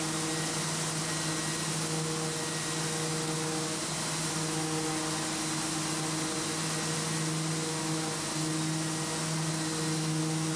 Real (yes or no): yes